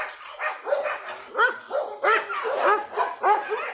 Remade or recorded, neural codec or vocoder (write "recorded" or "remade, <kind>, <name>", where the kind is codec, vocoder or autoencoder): recorded